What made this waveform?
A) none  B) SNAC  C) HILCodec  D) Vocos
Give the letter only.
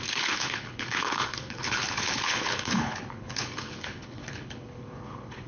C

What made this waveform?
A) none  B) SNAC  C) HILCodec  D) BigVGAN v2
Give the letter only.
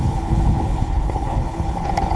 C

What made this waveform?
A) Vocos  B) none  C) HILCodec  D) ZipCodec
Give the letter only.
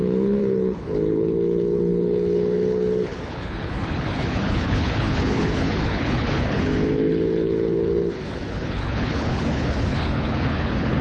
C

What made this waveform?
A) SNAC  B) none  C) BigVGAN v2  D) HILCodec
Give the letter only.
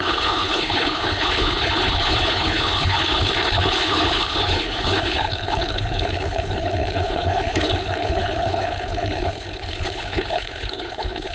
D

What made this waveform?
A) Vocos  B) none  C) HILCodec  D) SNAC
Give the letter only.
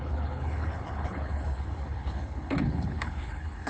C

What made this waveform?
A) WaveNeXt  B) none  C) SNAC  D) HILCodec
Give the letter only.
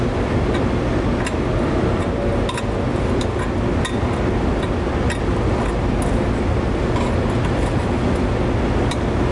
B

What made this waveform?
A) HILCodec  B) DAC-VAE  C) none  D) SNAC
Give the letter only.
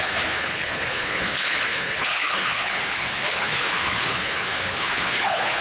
A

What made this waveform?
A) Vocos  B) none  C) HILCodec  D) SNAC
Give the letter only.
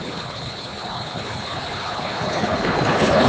C